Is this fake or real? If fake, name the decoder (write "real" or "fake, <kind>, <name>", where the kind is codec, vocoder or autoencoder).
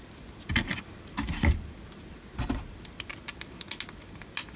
real